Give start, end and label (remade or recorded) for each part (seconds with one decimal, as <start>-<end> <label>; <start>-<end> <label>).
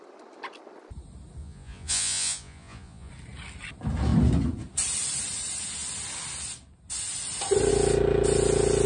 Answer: 0.0-1.4 recorded; 1.4-3.1 remade; 3.1-8.9 recorded